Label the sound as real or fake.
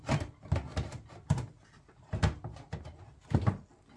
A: real